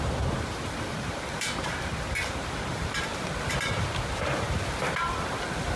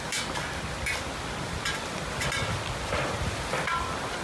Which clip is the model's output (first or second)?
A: first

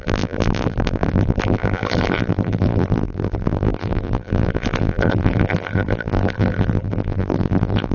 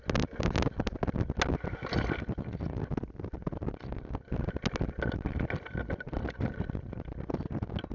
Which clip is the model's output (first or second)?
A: first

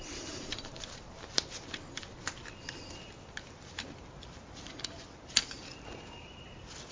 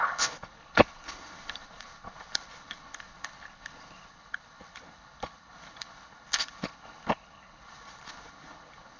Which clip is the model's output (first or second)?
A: second